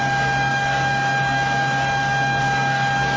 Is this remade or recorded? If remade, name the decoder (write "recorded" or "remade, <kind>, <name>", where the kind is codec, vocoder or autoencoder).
remade, codec, DAC